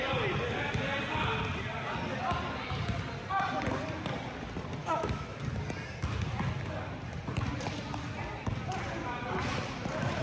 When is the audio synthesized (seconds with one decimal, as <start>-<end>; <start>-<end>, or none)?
4.8-5.4